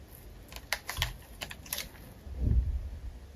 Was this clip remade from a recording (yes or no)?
no